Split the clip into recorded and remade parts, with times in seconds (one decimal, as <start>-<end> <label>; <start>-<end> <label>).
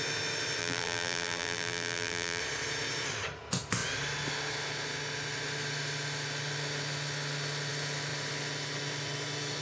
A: 0.0-0.6 recorded; 0.6-2.4 remade; 2.4-9.6 recorded